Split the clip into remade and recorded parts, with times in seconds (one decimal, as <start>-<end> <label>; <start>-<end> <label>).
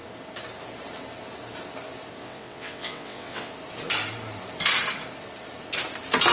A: 0.0-2.2 recorded; 2.2-3.5 remade; 3.5-6.3 recorded